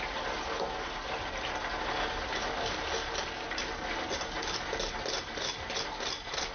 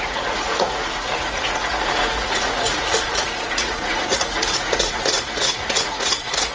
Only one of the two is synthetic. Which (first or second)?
second